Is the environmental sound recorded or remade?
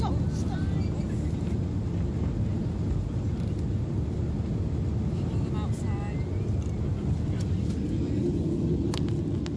recorded